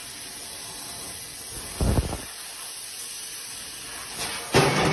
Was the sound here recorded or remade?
recorded